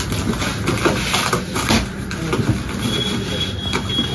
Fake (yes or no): no